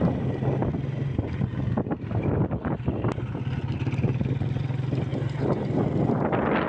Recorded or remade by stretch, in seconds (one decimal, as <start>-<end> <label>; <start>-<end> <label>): 0.0-6.7 recorded